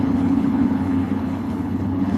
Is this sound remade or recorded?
remade